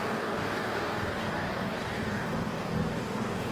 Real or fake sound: fake